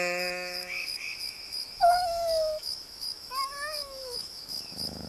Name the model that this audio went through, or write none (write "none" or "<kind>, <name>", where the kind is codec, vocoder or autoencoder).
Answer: autoencoder, DAC-VAE